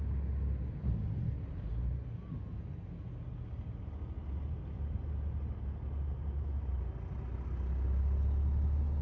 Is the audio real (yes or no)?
yes